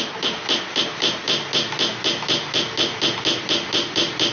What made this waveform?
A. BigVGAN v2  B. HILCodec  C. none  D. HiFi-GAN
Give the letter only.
C